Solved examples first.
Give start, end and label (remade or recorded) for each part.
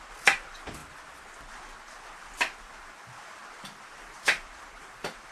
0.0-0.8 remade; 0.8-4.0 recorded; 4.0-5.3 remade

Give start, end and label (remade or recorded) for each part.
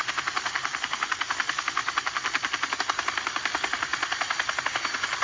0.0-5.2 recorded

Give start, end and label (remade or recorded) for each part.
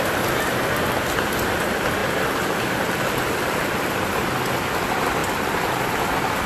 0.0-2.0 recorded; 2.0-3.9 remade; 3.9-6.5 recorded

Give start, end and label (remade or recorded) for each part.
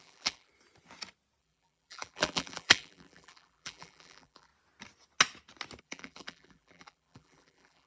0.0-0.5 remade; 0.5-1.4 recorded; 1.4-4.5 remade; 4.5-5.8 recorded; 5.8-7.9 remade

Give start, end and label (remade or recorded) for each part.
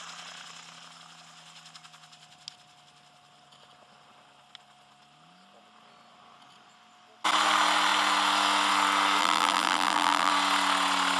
0.0-9.2 recorded; 9.2-10.3 remade; 10.3-11.2 recorded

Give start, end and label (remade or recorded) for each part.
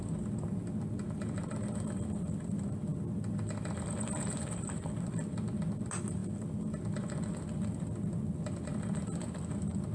0.0-2.9 recorded; 2.9-5.3 remade; 5.3-6.2 recorded; 6.2-7.3 remade; 7.3-9.9 recorded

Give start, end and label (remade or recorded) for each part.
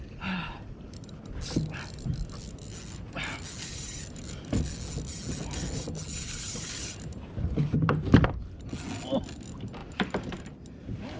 0.0-7.1 recorded; 7.1-8.4 remade; 8.4-9.8 recorded; 9.8-10.5 remade; 10.5-11.2 recorded